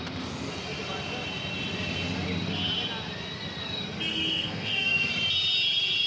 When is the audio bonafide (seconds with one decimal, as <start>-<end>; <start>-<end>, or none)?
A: 0.0-4.1; 5.1-6.1